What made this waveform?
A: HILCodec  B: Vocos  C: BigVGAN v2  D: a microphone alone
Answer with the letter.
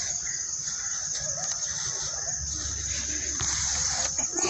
D